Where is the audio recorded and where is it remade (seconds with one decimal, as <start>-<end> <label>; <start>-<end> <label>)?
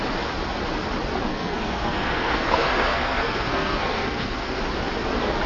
0.0-1.3 recorded; 1.3-4.6 remade; 4.6-5.5 recorded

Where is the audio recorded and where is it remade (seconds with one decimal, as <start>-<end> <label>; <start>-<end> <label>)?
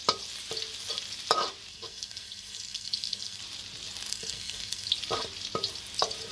0.0-1.7 recorded; 1.7-3.4 remade; 3.4-4.1 recorded; 4.1-4.9 remade; 4.9-6.3 recorded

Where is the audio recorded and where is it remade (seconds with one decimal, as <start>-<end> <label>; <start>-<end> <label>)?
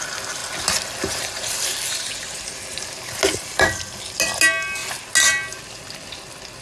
0.0-6.6 recorded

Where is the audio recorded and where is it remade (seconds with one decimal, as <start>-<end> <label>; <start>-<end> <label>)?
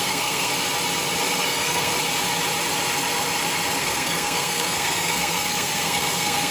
0.0-0.5 remade; 0.5-1.4 recorded; 1.4-1.9 remade; 1.9-3.8 recorded; 3.8-6.5 remade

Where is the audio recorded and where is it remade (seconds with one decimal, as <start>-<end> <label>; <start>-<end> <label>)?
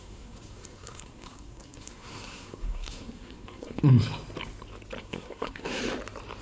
0.0-3.8 remade; 3.8-5.0 recorded; 5.0-5.8 remade; 5.8-6.4 recorded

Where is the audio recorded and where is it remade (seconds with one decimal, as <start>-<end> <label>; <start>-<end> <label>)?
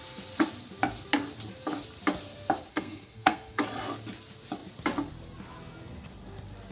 0.0-2.7 recorded; 2.7-3.6 remade; 3.6-6.7 recorded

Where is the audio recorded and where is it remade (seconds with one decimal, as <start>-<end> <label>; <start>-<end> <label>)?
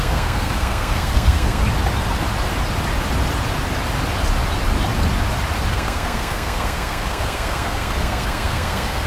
0.0-1.6 remade; 1.6-5.7 recorded; 5.7-9.1 remade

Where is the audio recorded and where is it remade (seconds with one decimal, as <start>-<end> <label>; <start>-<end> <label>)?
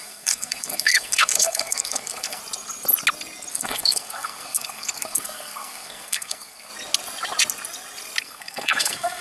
0.0-2.4 remade; 2.4-3.5 recorded; 3.5-6.7 remade; 6.7-8.2 recorded; 8.2-9.2 remade